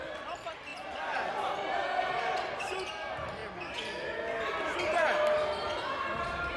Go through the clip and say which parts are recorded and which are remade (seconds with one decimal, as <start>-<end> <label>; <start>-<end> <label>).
0.0-0.7 recorded; 0.7-2.1 remade; 2.1-6.6 recorded